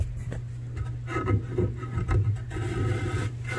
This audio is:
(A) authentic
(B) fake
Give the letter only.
A